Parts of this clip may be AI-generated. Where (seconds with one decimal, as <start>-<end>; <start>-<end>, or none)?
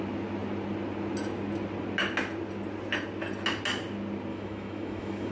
4.3-5.3